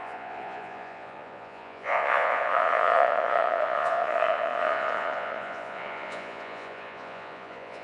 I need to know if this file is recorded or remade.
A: remade